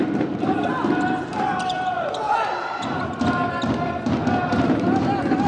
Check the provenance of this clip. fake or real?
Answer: real